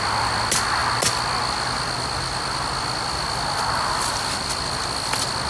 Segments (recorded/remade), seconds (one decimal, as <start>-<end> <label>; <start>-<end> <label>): 0.0-5.5 recorded